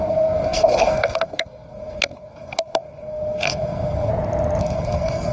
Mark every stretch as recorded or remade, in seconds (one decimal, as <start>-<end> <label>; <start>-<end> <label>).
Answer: 0.0-4.1 remade; 4.1-4.6 recorded; 4.6-5.3 remade